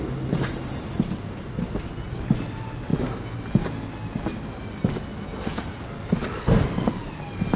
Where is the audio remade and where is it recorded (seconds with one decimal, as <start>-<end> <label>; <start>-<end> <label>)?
0.0-7.6 recorded